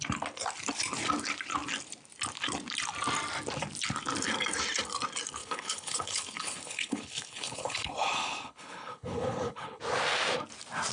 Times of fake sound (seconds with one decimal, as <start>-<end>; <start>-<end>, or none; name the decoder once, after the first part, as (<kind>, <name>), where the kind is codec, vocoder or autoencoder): 5.4-9.8 (codec, HILCodec)